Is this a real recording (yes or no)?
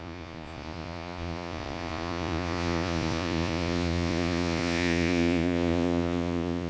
no